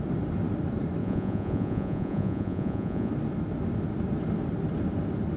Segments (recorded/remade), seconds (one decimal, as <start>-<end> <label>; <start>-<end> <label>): 0.0-1.0 recorded; 1.0-3.1 remade; 3.1-5.4 recorded